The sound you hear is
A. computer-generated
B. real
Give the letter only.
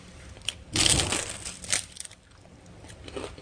A